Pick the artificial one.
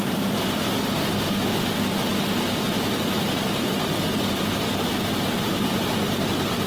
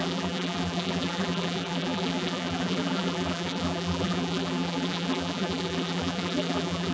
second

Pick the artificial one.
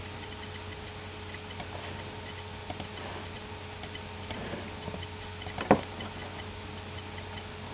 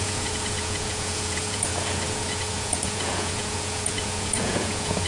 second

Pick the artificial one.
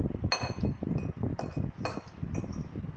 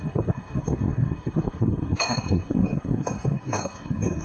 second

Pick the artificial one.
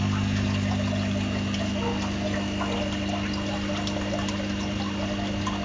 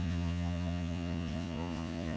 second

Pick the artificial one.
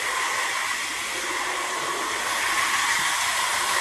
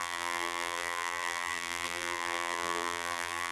second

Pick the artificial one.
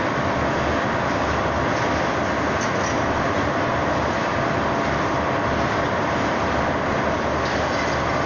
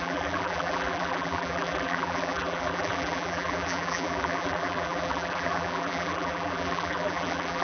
second